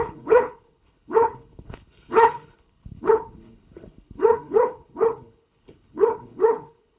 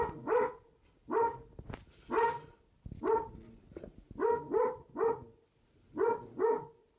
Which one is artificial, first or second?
first